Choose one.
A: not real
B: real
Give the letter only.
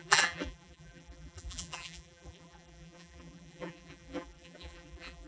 A